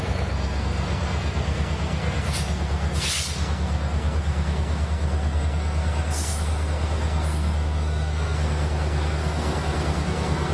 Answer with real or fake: fake